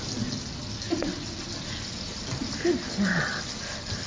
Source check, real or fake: real